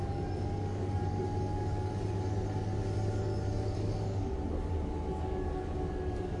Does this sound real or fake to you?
fake